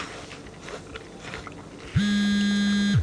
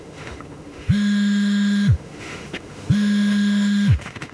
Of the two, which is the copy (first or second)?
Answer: second